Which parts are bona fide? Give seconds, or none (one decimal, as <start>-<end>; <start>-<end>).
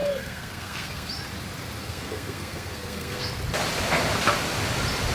1.1-1.8; 3.3-5.1